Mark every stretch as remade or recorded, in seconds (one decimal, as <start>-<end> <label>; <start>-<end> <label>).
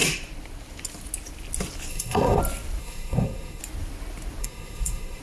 0.0-1.9 recorded; 1.9-2.4 remade; 2.4-2.8 recorded; 2.8-3.6 remade; 3.6-4.4 recorded; 4.4-5.2 remade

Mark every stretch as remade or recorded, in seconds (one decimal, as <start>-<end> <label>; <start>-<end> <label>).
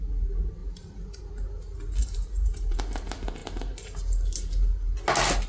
0.0-0.6 recorded; 0.6-1.2 remade; 1.2-2.0 recorded; 2.0-2.8 remade; 2.8-5.5 recorded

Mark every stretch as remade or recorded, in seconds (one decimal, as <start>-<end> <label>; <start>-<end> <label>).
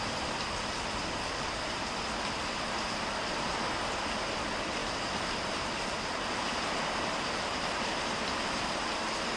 0.0-4.8 recorded; 4.8-8.6 remade; 8.6-9.4 recorded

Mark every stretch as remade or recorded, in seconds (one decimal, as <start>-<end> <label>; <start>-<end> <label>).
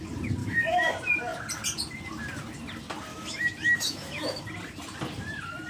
0.0-0.4 recorded; 0.4-0.9 remade; 0.9-3.1 recorded; 3.1-4.4 remade; 4.4-5.7 recorded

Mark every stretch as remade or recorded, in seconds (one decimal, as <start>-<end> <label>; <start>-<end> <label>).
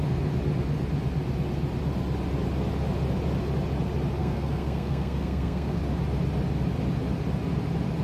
0.0-4.2 recorded; 4.2-5.8 remade; 5.8-8.0 recorded